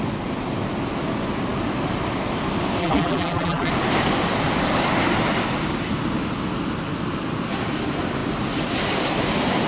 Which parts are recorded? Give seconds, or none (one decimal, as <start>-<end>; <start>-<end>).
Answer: 0.0-2.8; 3.7-9.7